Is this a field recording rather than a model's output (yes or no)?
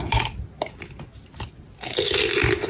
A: yes